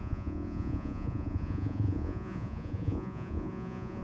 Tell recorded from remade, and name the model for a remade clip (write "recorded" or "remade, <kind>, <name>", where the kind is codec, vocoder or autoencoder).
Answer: remade, vocoder, Vocos